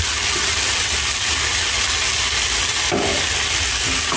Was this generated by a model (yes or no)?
no